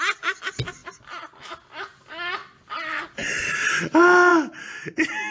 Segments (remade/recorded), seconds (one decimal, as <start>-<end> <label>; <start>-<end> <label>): 0.0-5.3 recorded